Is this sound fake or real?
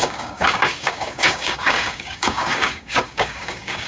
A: fake